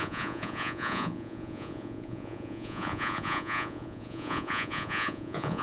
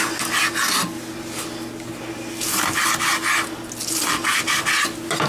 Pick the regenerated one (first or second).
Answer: first